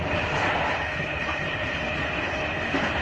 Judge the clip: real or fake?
real